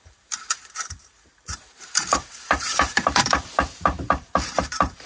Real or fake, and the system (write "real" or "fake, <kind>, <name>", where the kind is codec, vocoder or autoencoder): fake, vocoder, BigVGAN v2